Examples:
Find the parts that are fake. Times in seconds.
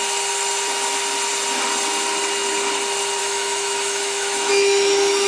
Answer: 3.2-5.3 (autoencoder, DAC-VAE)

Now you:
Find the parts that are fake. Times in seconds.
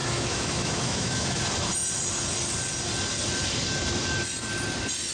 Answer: 0.0-1.4 (autoencoder, DAC-VAE)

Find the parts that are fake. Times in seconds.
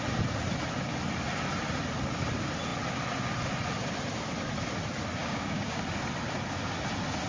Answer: 5.2-5.8 (codec, DAC)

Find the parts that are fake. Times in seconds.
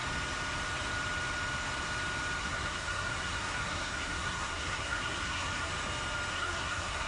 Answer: 2.4-5.7 (codec, SNAC); 6.3-7.1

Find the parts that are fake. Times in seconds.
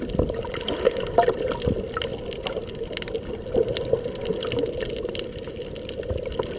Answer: none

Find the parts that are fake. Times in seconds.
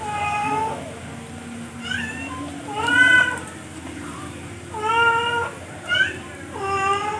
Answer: none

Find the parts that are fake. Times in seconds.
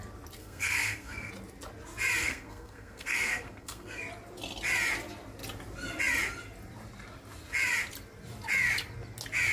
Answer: 0.4-1.3 (codec, SNAC); 2.2-4.0